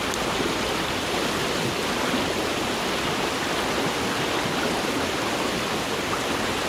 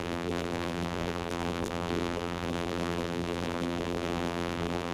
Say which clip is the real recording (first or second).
first